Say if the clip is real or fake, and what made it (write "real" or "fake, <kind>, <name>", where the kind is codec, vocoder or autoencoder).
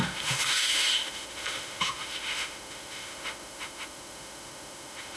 fake, autoencoder, DAC-VAE